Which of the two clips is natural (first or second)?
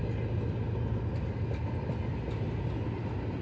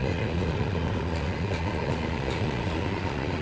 first